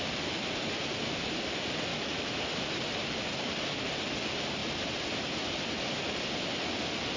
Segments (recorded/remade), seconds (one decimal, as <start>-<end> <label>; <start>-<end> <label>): 0.0-1.9 recorded; 1.9-2.4 remade; 2.4-7.2 recorded